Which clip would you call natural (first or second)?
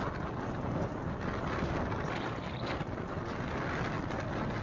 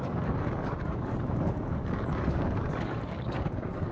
first